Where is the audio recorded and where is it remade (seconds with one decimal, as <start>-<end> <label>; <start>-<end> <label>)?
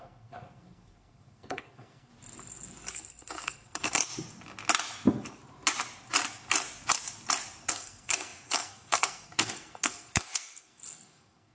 0.0-2.1 remade; 2.1-2.9 recorded; 2.9-4.1 remade; 4.1-7.7 recorded; 7.7-11.5 remade